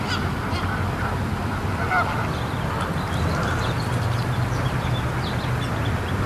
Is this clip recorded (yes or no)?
yes